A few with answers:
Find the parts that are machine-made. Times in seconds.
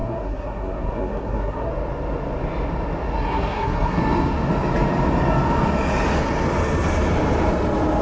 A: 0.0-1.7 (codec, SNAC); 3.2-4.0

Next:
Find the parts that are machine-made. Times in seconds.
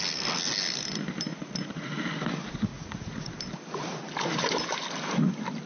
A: 1.3-2.0 (vocoder, Vocos); 2.7-3.3